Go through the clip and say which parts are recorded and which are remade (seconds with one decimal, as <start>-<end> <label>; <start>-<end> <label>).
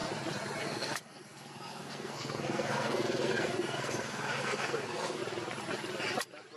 0.0-0.6 recorded; 0.6-5.2 remade; 5.2-6.6 recorded